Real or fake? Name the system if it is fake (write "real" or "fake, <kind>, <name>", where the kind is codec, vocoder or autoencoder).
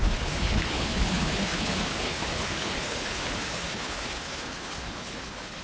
fake, codec, HILCodec